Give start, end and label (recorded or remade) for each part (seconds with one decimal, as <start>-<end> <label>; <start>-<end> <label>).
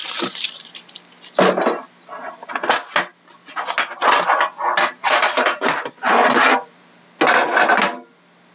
0.0-0.9 remade; 0.9-5.0 recorded; 5.0-7.0 remade; 7.0-8.5 recorded